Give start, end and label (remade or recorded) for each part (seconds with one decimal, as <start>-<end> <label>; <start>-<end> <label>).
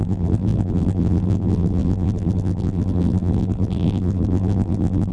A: 0.0-5.1 remade